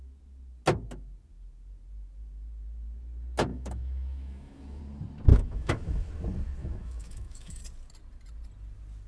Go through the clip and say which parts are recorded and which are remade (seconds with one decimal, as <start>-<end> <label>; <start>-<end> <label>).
0.0-3.5 recorded; 3.5-4.8 remade; 4.8-5.3 recorded; 5.3-6.1 remade; 6.1-6.6 recorded; 6.6-7.6 remade; 7.6-9.1 recorded